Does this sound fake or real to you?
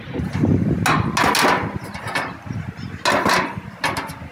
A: real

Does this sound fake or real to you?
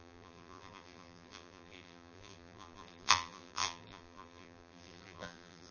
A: fake